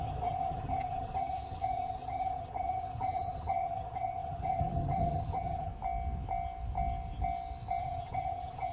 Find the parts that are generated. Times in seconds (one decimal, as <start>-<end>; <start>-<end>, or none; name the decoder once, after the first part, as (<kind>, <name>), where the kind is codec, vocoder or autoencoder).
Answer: 0.0-5.7 (vocoder, HiFi-GAN); 7.8-8.7